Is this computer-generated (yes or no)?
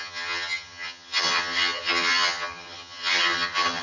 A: yes